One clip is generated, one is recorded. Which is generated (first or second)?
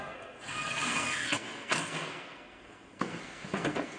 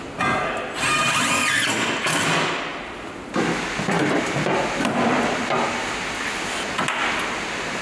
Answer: first